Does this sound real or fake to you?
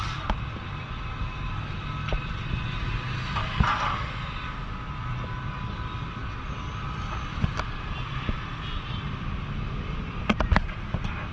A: real